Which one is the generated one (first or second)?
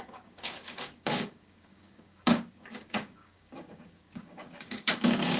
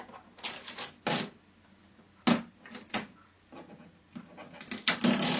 first